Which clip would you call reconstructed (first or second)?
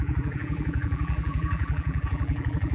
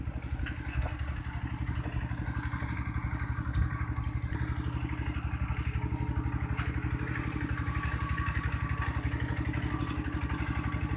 first